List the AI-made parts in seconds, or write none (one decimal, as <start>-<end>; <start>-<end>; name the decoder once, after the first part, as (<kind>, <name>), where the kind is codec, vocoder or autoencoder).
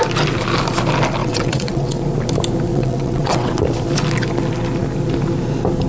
1.2-2.0 (vocoder, WaveNeXt); 2.7-3.6